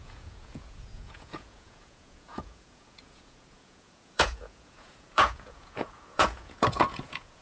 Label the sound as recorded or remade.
remade